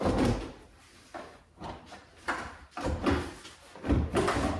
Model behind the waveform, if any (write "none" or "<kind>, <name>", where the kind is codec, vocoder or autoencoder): none